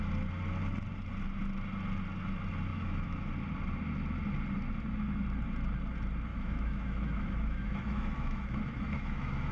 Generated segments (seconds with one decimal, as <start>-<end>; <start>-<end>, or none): 2.7-3.3; 6.3-9.5